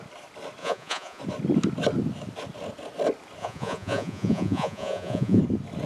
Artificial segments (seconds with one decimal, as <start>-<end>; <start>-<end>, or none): 0.6-1.2; 3.4-5.4